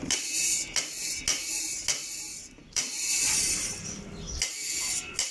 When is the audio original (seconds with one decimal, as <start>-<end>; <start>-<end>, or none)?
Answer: 0.0-2.3; 3.6-5.3